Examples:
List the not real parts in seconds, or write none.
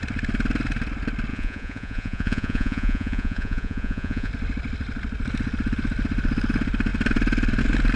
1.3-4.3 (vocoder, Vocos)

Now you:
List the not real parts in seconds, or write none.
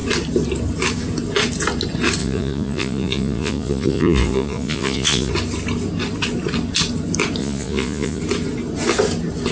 2.2-5.3 (vocoder, Vocos); 7.4-8.2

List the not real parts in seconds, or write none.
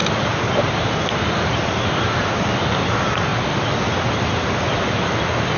none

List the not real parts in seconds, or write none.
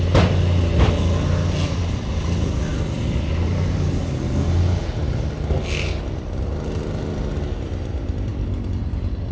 none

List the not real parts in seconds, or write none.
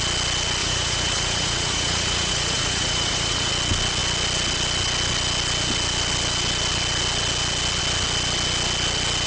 0.6-3.5 (vocoder, Vocos)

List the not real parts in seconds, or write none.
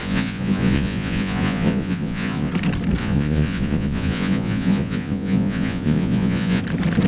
0.0-2.5 (vocoder, Vocos); 3.0-6.6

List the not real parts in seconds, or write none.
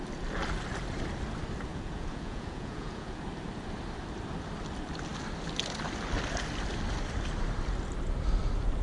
1.7-3.2 (vocoder, Vocos)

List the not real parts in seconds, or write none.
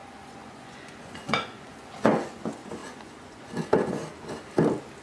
0.0-4.0 (vocoder, Vocos)